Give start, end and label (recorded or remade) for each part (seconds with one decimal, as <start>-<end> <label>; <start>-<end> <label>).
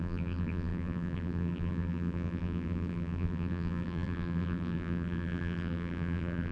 0.0-6.5 remade